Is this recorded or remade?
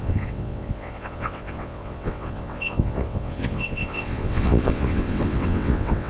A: remade